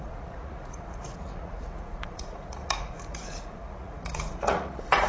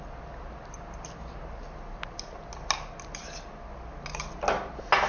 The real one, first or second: second